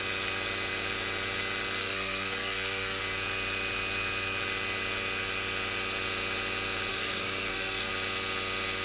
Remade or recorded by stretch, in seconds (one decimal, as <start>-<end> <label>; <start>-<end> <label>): 0.0-1.8 recorded; 1.8-3.0 remade; 3.0-6.9 recorded; 6.9-7.9 remade; 7.9-8.8 recorded